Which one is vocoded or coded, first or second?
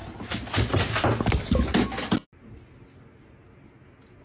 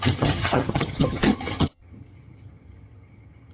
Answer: second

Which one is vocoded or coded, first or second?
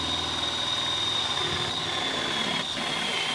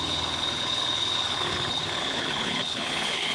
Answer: second